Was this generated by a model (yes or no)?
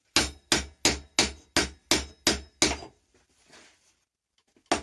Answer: no